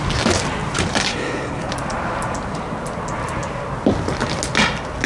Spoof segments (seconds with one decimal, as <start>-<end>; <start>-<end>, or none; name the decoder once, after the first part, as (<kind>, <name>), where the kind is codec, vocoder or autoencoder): 1.1-1.7 (codec, HILCodec)